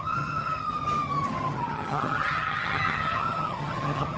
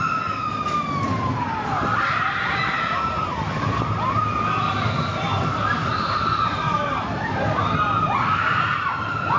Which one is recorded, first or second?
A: second